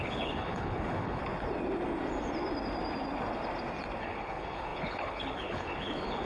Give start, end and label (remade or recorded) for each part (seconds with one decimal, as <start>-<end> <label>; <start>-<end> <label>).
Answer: 0.0-1.2 remade; 1.2-4.0 recorded; 4.0-6.3 remade